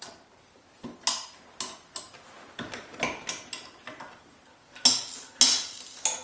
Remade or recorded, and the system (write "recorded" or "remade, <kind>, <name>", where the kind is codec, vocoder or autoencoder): recorded